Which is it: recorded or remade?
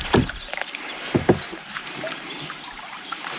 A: remade